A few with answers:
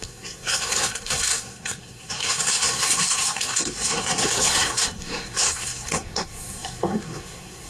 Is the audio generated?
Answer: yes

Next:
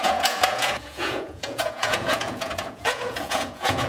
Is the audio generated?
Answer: yes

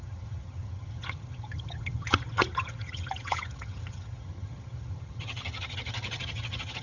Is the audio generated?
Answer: yes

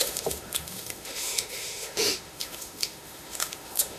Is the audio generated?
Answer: yes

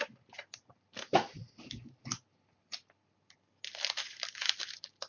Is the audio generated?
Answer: no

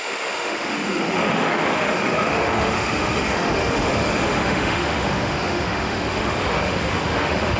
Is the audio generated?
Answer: yes